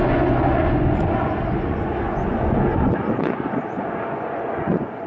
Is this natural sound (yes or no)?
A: no